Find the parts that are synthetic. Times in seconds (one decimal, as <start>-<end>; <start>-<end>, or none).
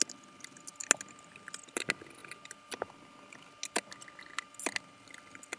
none